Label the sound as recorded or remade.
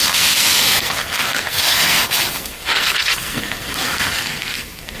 remade